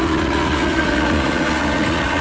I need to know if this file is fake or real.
fake